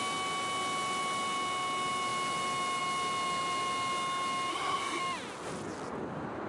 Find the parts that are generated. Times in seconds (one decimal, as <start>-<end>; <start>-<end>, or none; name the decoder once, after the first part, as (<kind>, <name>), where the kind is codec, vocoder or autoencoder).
4.5-5.0 (codec, SNAC)